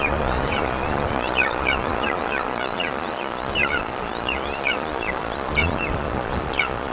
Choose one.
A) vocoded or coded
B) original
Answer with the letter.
A